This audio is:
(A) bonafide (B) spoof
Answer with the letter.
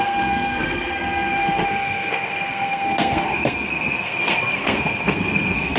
B